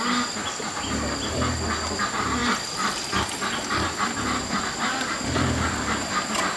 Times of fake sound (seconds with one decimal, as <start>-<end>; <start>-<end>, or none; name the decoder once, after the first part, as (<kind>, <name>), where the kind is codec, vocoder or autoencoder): none